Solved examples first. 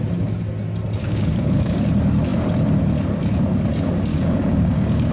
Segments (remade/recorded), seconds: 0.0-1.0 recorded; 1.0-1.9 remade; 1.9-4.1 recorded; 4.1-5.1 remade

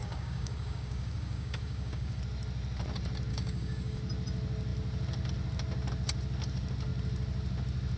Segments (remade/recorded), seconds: 0.0-2.2 remade; 2.2-3.3 recorded; 3.3-4.0 remade; 4.0-8.0 recorded

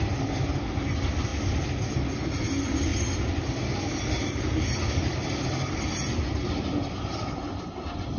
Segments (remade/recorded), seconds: 0.0-8.2 recorded

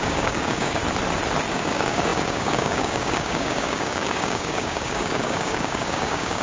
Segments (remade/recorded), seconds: 0.0-0.8 remade; 0.8-1.5 recorded; 1.5-6.4 remade